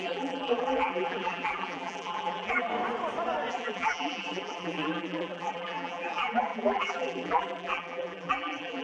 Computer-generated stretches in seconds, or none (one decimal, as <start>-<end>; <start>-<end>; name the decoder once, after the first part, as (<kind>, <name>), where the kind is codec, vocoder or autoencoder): 0.0-2.7 (vocoder, BigVGAN v2); 3.5-8.8